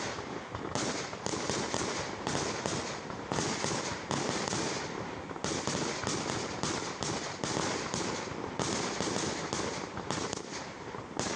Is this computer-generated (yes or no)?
no